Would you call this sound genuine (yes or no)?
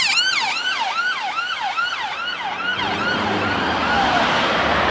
yes